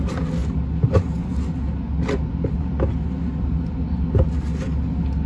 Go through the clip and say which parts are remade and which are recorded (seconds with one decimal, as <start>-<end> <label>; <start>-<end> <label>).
0.0-5.3 recorded